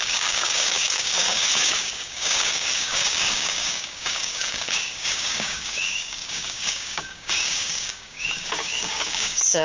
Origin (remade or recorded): remade